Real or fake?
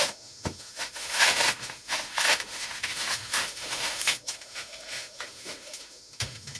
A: fake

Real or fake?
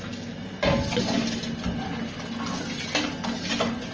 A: real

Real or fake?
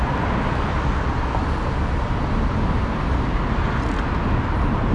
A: real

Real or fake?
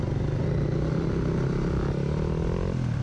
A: real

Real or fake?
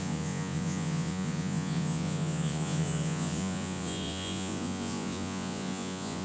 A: fake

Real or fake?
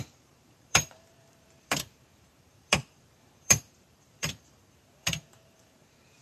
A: fake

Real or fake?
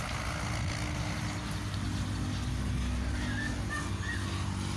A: real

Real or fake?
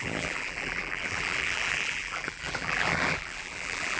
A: fake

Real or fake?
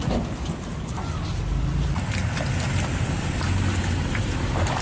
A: real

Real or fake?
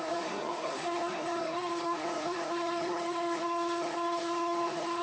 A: fake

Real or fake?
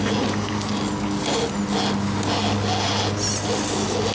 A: real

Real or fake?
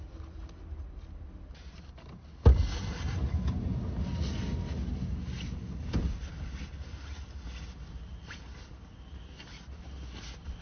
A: real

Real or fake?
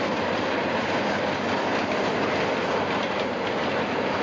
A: real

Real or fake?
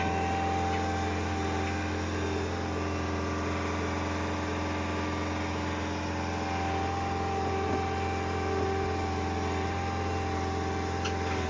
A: real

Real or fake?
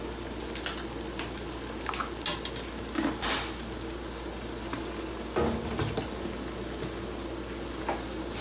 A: real